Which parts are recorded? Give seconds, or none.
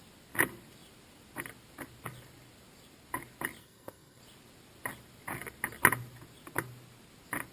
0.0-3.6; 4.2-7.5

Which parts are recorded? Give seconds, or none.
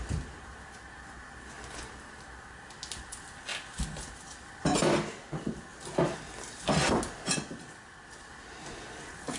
0.0-9.4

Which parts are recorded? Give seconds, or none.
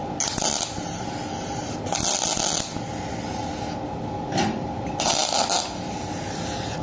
0.0-6.8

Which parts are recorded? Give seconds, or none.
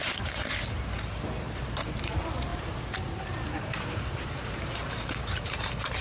none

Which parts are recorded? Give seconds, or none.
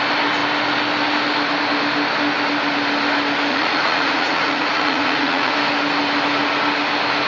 0.0-3.5; 5.5-7.3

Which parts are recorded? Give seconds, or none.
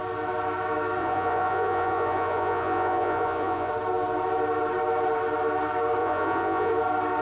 0.0-1.0; 3.7-6.0; 6.7-7.2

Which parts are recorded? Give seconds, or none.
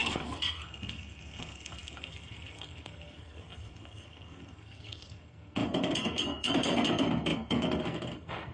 none